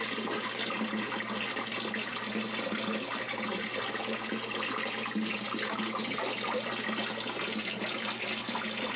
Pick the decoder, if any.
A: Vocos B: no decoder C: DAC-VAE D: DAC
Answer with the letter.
B